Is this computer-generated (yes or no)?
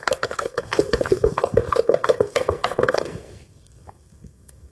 yes